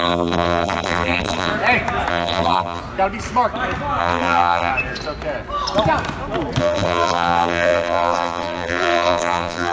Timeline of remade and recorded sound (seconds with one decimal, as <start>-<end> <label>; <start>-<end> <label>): 0.0-1.5 remade; 1.5-2.1 recorded; 2.1-2.8 remade; 2.8-4.0 recorded; 4.0-4.7 remade; 4.7-6.6 recorded; 6.6-9.7 remade